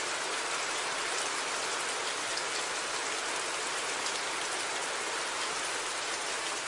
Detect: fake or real real